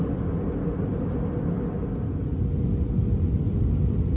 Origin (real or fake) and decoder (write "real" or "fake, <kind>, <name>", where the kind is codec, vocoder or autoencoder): real